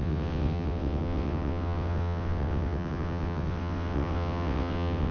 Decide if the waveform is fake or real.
fake